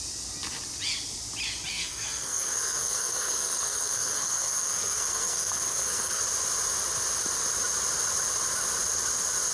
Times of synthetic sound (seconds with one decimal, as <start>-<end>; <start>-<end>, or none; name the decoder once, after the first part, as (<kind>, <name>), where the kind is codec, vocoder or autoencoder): 1.7-6.2 (codec, SNAC)